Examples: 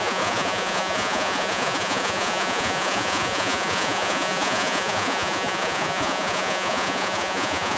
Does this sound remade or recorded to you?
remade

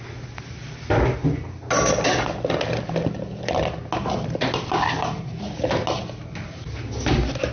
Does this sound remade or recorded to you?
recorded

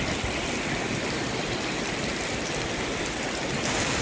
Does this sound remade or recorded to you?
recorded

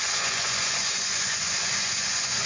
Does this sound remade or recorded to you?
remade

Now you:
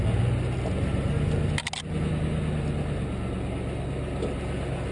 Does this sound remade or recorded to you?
recorded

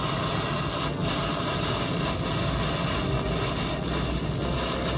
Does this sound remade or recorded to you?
recorded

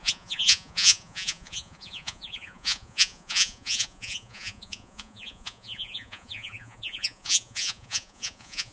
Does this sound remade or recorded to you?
remade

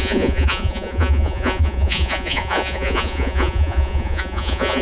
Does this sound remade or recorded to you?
remade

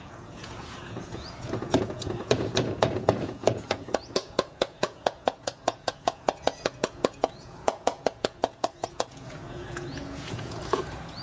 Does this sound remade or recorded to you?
remade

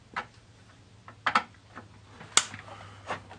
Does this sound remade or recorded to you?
recorded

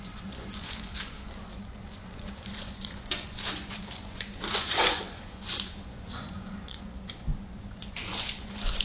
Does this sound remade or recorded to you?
remade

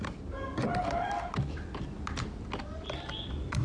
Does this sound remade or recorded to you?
recorded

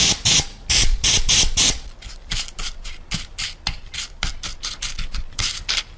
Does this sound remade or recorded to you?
recorded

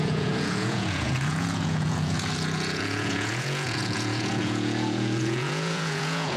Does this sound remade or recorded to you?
remade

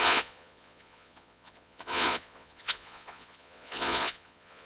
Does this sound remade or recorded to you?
remade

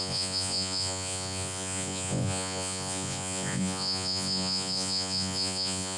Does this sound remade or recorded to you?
remade